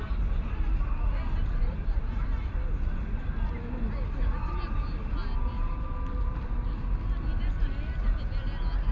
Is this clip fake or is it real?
real